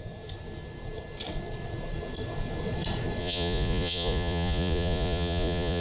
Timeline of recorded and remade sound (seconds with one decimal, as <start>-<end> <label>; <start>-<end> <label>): 0.0-3.2 recorded; 3.2-5.8 remade